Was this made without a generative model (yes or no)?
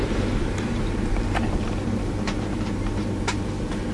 no